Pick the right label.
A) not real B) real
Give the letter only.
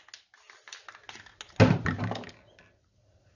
B